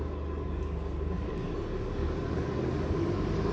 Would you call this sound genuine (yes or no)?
no